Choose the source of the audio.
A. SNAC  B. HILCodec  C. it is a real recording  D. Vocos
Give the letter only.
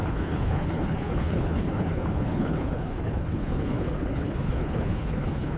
B